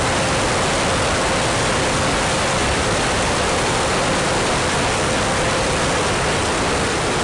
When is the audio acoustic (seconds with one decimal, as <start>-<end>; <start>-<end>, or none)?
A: 0.0-2.6; 3.4-7.2